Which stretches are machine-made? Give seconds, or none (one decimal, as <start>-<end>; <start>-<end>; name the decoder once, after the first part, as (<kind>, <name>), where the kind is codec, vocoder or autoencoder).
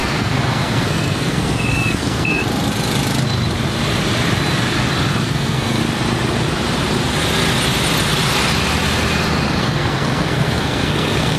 0.0-2.4 (codec, SNAC); 5.2-5.8; 9.6-11.4